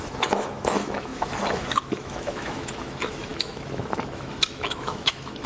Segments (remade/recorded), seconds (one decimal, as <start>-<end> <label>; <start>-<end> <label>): 0.0-5.5 remade